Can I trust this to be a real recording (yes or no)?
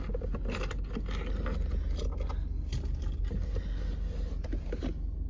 yes